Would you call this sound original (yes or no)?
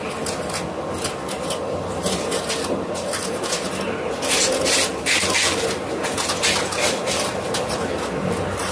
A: yes